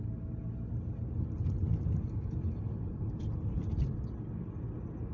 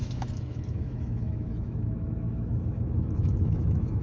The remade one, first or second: second